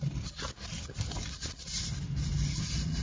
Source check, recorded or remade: recorded